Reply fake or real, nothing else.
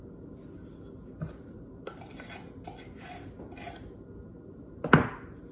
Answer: real